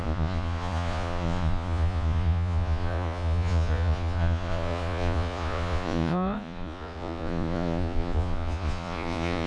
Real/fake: fake